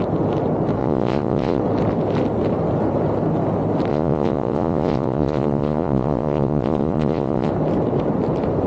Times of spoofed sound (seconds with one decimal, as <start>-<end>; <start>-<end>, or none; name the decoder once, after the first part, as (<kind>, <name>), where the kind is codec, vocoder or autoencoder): 0.8-1.6 (vocoder, Vocos); 3.9-7.5